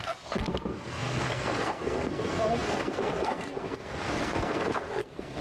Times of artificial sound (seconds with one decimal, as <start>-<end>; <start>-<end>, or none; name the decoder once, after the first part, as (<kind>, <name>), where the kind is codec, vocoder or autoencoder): 0.0-5.4 (codec, SNAC)

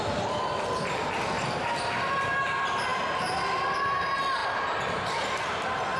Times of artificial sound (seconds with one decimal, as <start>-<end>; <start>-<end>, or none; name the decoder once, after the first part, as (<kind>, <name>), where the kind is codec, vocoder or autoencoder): none

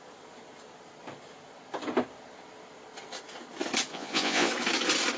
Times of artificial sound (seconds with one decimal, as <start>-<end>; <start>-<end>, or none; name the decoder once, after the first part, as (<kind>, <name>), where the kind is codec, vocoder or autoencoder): 3.9-4.5 (vocoder, Vocos)